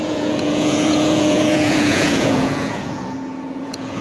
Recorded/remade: remade